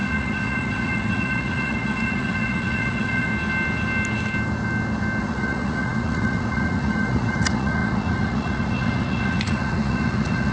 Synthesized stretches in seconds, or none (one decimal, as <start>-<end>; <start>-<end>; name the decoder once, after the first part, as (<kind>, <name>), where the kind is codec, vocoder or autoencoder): 0.0-3.3 (vocoder, Vocos); 5.2-10.5